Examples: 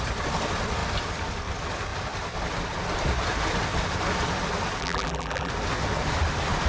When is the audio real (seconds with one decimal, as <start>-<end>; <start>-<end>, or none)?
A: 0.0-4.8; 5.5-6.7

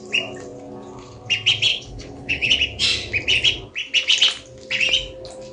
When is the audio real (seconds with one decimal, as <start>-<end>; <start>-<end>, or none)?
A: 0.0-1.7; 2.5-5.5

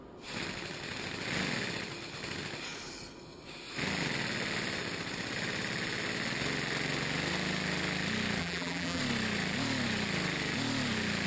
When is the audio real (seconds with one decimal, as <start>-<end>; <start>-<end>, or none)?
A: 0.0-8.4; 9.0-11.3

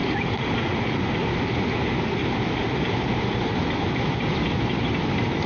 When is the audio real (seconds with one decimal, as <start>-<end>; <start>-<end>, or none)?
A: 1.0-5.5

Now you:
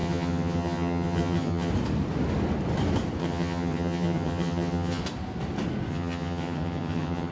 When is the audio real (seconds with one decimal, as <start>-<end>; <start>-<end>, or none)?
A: 1.7-3.2; 5.0-5.9